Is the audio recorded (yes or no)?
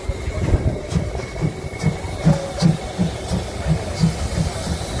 yes